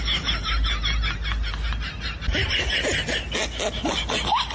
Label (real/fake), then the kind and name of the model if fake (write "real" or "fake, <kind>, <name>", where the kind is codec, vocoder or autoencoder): real